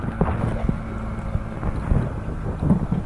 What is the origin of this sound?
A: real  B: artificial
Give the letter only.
A